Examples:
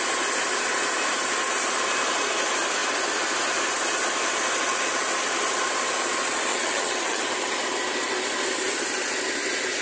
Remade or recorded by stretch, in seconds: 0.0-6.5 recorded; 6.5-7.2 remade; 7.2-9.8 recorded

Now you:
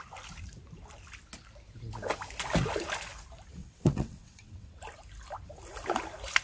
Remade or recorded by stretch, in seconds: 0.0-3.6 recorded; 3.6-4.8 remade; 4.8-6.4 recorded